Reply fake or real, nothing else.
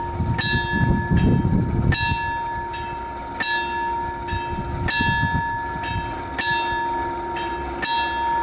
real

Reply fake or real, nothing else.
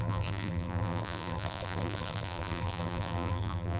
fake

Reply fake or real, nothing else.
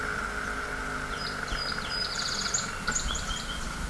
real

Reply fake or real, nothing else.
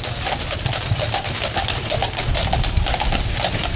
real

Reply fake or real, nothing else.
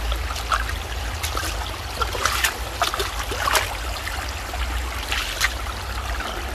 real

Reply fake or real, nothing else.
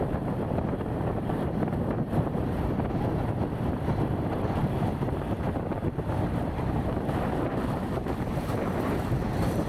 fake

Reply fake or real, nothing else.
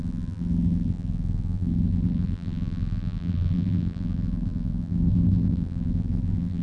fake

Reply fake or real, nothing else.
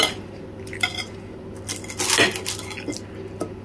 real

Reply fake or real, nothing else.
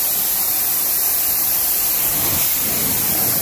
real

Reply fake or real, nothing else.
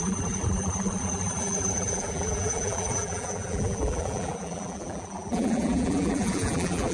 fake